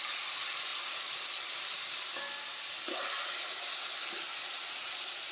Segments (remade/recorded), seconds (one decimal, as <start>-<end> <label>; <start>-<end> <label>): 0.0-5.3 recorded